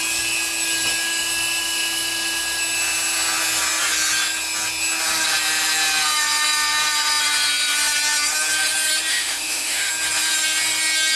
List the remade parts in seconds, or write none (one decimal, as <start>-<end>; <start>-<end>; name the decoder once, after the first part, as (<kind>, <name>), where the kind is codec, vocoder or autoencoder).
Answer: 9.1-9.9 (autoencoder, DAC-VAE)